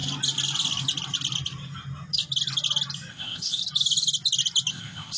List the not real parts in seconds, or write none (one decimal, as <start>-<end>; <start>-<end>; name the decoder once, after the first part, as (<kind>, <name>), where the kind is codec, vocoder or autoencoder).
3.1-3.6 (codec, ZipCodec); 4.7-5.2

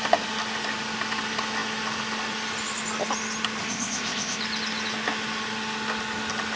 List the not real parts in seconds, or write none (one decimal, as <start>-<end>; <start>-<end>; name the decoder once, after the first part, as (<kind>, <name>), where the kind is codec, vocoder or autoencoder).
3.6-4.4 (codec, ZipCodec)

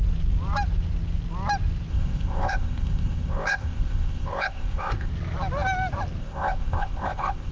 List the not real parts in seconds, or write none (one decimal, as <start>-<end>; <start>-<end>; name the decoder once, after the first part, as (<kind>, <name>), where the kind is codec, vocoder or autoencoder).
1.9-5.1 (codec, ZipCodec); 6.2-7.5